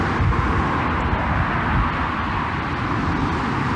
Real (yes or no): yes